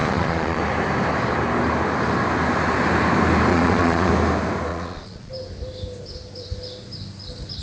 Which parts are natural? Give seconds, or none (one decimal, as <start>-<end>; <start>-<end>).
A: 0.6-3.5; 4.1-4.7; 5.3-7.6